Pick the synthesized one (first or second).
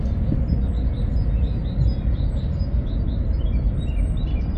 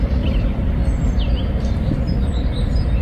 second